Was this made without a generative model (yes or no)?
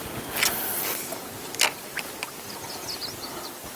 yes